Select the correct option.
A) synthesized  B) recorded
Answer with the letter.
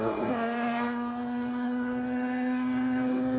A